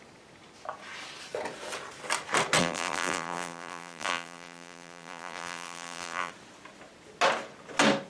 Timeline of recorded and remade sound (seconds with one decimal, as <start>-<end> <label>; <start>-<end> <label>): 0.0-2.6 recorded; 2.6-6.3 remade; 6.3-8.1 recorded